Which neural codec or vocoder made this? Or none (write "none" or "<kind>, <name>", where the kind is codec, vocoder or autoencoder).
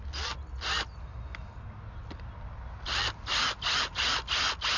none